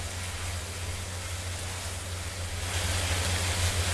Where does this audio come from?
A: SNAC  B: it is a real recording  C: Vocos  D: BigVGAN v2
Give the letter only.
B